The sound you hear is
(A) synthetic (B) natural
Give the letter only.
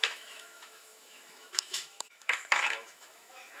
A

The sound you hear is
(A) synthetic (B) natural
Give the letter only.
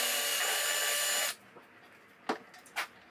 B